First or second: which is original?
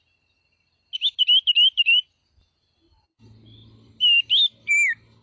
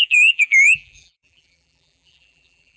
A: first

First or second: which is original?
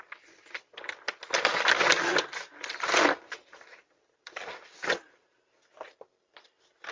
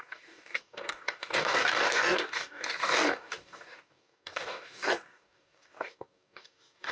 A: first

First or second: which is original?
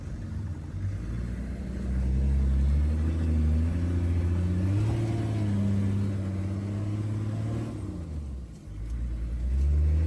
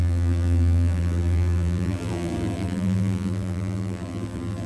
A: first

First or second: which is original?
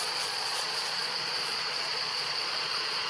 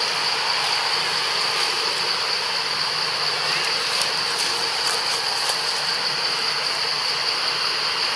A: second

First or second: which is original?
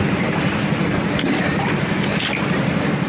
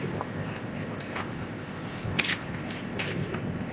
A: first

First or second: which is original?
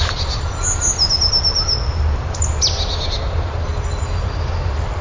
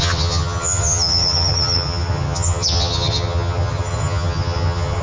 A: first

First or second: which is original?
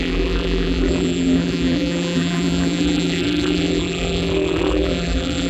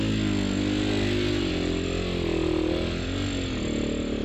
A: second